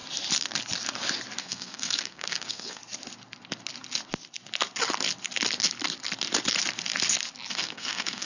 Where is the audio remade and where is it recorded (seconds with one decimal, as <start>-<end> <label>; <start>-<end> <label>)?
0.0-1.4 recorded; 1.4-2.8 remade; 2.8-7.5 recorded; 7.5-8.2 remade